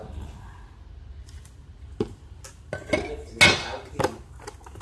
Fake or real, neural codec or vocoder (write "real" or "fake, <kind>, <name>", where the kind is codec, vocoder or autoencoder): real